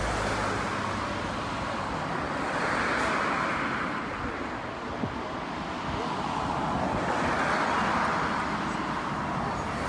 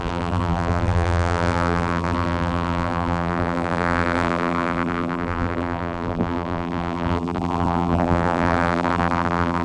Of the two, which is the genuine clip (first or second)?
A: first